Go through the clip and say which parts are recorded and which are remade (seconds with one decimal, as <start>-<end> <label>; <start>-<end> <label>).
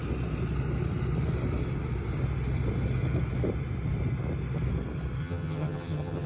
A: 0.0-5.2 recorded; 5.2-6.3 remade